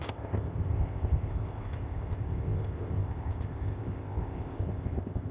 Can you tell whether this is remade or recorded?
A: remade